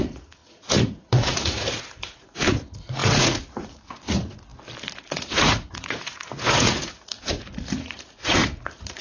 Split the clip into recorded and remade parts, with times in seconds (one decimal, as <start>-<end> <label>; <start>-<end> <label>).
0.0-4.5 remade; 4.5-5.0 recorded; 5.0-9.0 remade